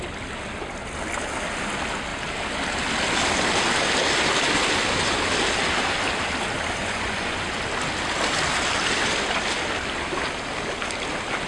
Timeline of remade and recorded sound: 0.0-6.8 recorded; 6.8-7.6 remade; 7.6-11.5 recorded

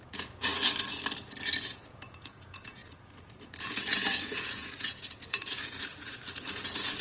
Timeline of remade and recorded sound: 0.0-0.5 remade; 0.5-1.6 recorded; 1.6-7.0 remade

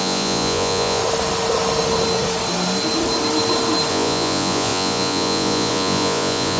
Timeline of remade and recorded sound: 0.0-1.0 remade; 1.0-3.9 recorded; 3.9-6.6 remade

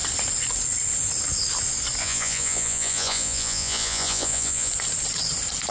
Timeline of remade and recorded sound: 0.0-2.0 recorded; 2.0-4.7 remade; 4.7-5.7 recorded